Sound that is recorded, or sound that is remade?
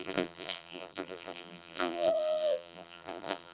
remade